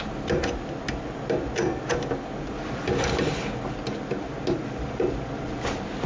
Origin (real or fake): real